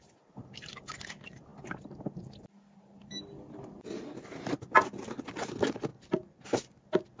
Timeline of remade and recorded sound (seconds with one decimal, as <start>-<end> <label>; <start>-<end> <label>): 0.0-7.2 recorded